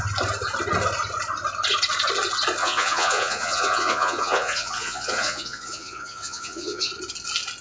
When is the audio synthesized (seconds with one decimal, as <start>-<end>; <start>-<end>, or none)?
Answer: 2.6-6.9